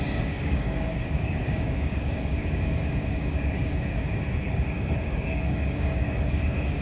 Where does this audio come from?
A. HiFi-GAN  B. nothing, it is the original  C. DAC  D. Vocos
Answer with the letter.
C